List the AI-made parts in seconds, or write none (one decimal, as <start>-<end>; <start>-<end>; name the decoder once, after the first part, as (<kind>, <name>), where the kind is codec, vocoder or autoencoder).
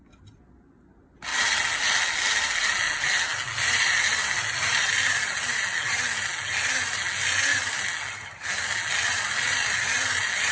none